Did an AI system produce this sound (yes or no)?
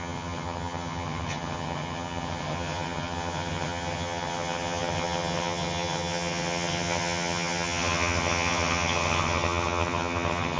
yes